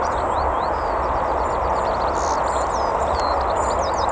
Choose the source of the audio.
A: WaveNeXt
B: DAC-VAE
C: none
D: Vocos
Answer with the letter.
C